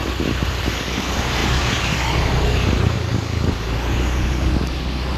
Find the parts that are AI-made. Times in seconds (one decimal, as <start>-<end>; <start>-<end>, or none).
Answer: 0.6-5.2

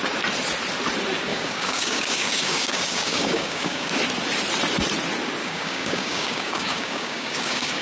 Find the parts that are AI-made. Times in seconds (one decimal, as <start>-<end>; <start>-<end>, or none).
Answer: 1.3-3.9; 5.4-7.8

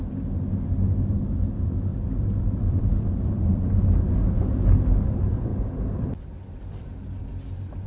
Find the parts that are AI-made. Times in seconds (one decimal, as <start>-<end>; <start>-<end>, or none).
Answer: 1.9-4.0; 5.5-7.2

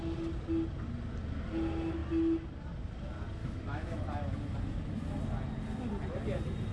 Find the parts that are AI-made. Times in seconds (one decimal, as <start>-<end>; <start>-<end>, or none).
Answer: 3.4-4.0

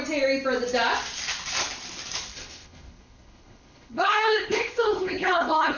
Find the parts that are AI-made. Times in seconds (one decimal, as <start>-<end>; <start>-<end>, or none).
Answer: 2.3-5.8

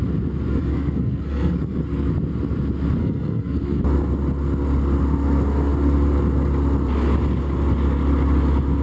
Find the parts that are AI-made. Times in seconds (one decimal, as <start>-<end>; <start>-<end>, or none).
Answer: 0.5-2.1; 3.0-3.8

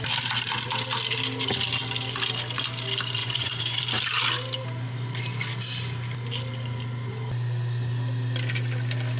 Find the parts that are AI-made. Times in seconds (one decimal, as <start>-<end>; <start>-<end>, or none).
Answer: 3.2-3.8

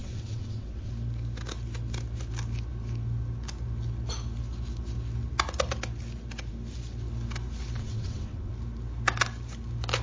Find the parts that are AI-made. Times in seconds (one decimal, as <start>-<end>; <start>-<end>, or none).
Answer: 0.0-0.9; 7.8-8.5